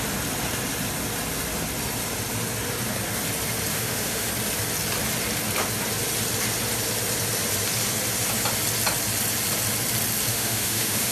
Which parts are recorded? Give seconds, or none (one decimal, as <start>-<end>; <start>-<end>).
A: 0.0-3.7; 4.3-10.3